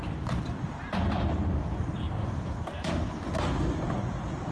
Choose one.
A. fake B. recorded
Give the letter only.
B